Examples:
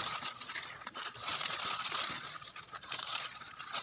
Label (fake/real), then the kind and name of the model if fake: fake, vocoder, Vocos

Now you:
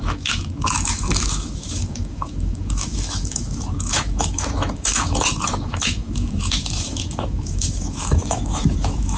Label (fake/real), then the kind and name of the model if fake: fake, autoencoder, DAC-VAE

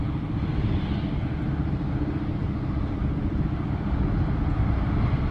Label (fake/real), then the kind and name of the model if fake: real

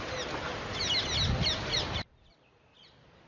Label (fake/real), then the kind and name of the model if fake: real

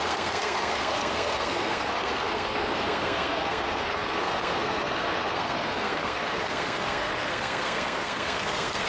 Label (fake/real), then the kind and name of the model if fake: fake, codec, SNAC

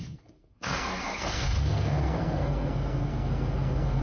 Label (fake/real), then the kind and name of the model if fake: fake, codec, SNAC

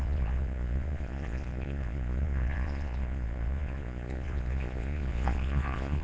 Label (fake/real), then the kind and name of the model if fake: fake, vocoder, Vocos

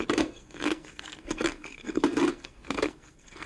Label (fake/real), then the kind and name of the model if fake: fake, codec, SNAC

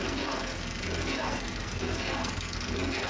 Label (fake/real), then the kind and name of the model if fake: fake, codec, SNAC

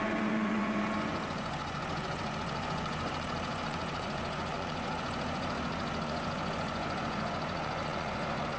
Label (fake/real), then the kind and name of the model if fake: fake, vocoder, Vocos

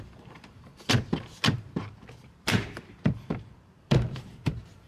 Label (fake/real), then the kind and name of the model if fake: fake, vocoder, BigVGAN v2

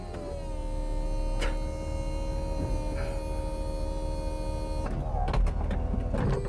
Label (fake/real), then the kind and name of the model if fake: real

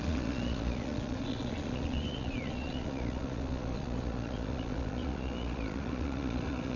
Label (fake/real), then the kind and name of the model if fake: fake, vocoder, Vocos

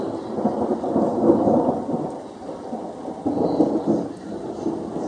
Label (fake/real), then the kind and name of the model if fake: real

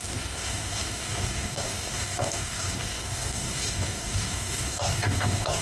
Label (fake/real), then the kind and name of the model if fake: fake, codec, DAC